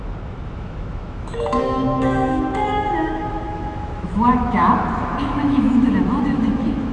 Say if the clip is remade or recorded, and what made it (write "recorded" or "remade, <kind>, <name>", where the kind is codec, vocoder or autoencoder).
remade, autoencoder, DAC-VAE